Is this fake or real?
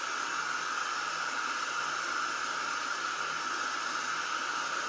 real